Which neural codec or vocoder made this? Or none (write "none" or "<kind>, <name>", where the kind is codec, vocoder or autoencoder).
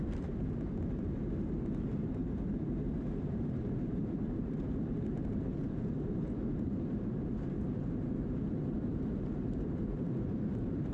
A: vocoder, BigVGAN v2